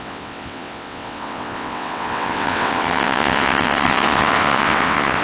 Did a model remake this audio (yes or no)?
yes